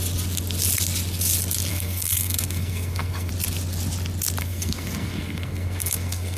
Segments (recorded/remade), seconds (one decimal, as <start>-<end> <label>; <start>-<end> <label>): 0.0-1.7 recorded; 1.7-3.3 remade; 3.3-4.4 recorded; 4.4-6.4 remade